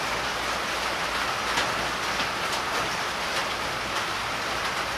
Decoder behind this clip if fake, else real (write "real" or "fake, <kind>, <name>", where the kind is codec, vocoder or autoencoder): real